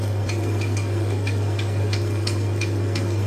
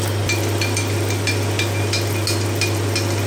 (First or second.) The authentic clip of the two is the second